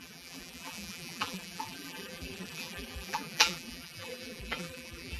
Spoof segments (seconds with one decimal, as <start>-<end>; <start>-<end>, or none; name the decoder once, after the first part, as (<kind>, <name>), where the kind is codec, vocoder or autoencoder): 0.0-5.2 (vocoder, BigVGAN v2)

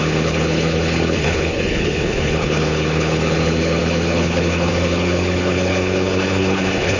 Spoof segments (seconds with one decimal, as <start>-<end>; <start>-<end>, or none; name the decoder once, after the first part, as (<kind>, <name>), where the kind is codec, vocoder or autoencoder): 0.0-7.0 (codec, HILCodec)

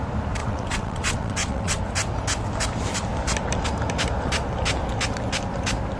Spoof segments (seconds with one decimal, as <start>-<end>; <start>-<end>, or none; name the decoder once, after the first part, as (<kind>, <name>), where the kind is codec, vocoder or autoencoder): 0.4-1.8 (vocoder, WaveNeXt)

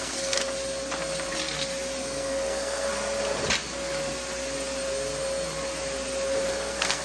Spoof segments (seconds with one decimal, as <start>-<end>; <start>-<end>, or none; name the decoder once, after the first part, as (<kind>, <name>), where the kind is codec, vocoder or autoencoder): 0.0-0.4 (codec, SNAC); 2.0-2.9; 6.5-7.0

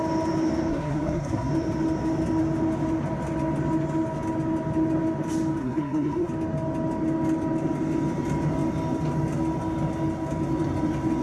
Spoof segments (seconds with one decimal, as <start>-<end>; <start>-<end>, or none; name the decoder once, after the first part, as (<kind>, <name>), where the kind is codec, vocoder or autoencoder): 0.7-1.5 (codec, SNAC); 5.6-6.3

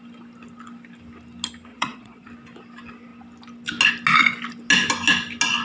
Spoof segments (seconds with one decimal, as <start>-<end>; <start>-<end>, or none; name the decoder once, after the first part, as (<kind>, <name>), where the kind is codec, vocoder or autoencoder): 1.7-2.3 (vocoder, Vocos)

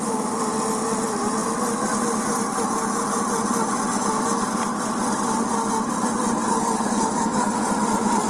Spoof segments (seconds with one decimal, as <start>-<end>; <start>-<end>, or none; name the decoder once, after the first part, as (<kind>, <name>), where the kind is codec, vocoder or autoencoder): 6.4-7.7 (codec, DAC)